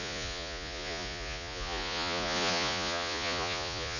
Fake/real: fake